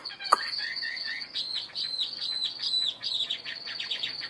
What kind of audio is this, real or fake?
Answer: fake